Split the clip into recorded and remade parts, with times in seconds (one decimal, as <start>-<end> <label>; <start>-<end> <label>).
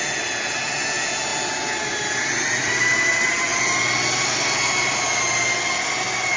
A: 0.0-6.4 recorded